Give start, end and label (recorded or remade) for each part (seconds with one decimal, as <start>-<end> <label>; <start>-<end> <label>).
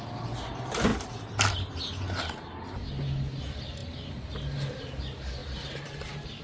0.0-6.4 recorded